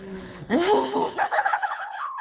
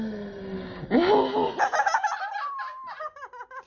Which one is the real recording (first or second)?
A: second